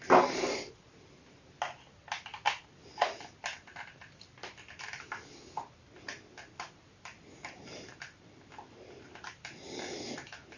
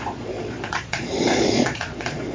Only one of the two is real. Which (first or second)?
first